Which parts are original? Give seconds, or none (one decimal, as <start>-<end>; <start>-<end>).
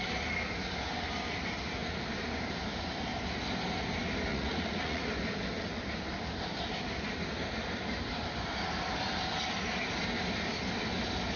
0.0-4.3; 5.0-11.4